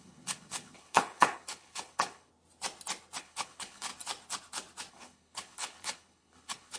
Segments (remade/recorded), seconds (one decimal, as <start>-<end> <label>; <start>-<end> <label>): 0.0-2.3 remade; 2.3-3.2 recorded; 3.2-3.9 remade; 3.9-4.9 recorded; 4.9-6.8 remade